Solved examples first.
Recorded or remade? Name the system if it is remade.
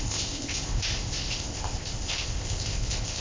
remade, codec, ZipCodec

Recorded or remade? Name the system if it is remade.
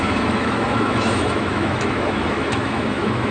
remade, autoencoder, DAC-VAE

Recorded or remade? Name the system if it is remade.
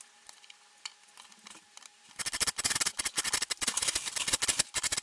recorded